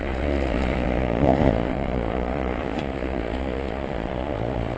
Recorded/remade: remade